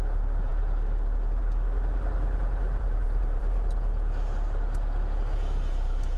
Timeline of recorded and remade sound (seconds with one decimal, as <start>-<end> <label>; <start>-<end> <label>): 0.0-2.7 recorded; 2.7-3.7 remade; 3.7-6.2 recorded